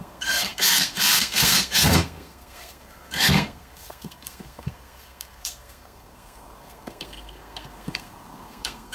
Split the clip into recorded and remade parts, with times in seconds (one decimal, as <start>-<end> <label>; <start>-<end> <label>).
0.0-8.9 remade